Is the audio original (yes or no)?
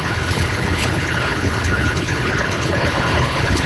no